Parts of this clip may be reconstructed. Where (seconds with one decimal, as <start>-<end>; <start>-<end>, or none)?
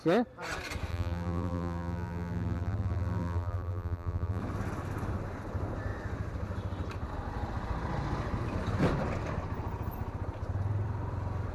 0.9-4.4